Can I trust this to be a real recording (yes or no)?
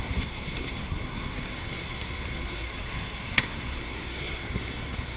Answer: no